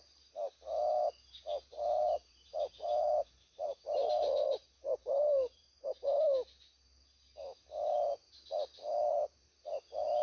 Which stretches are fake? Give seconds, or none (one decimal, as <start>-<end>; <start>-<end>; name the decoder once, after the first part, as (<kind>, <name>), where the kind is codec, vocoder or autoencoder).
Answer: 1.7-5.9 (vocoder, BigVGAN v2); 9.1-9.7